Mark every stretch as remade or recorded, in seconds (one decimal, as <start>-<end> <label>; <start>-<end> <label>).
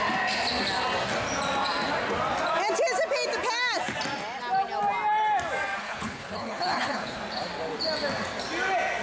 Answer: 0.0-5.8 recorded; 5.8-7.2 remade; 7.2-9.0 recorded